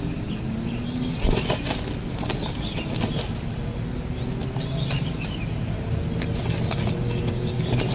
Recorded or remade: recorded